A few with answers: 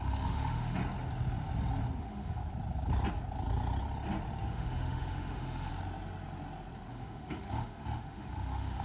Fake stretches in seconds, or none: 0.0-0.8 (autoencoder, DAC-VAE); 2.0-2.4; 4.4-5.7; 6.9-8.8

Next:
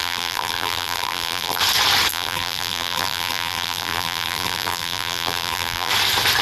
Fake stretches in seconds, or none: 0.0-1.6 (vocoder, BigVGAN v2); 2.1-5.9

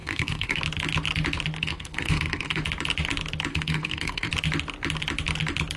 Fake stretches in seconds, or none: 0.0-0.6 (codec, SNAC); 1.6-2.6; 3.5-4.3

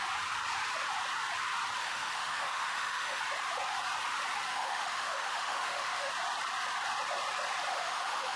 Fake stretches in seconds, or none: 1.8-3.2 (autoencoder, DAC-VAE); 4.5-6.1; 7.7-8.4

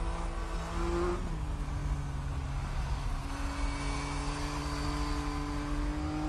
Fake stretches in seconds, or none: none

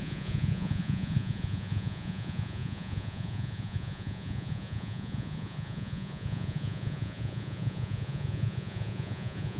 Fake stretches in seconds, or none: 0.0-9.6 (vocoder, Vocos)

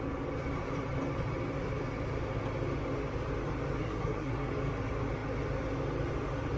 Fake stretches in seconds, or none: 3.8-4.5 (codec, SNAC)

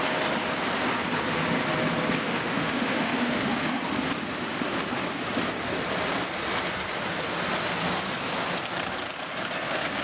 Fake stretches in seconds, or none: 2.2-3.8 (autoencoder, DAC-VAE)